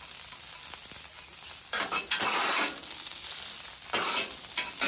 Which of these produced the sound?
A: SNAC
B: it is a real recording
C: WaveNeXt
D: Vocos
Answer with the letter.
B